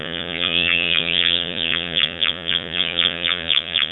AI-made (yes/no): yes